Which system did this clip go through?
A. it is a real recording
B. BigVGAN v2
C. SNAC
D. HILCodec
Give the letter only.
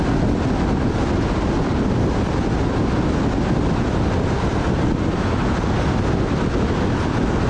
A